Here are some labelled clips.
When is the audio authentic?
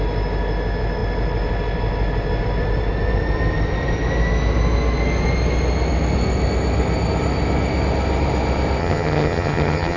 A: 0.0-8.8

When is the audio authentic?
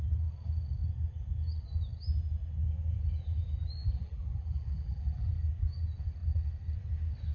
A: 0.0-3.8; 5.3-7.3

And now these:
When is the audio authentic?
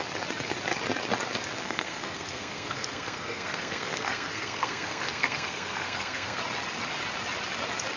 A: 0.0-1.6; 6.4-8.0